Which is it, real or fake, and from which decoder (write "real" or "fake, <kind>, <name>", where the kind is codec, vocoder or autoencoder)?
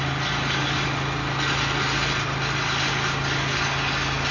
real